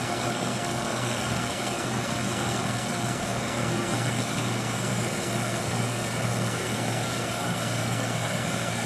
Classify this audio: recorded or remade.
remade